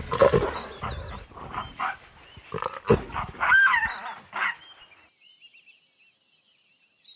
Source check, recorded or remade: recorded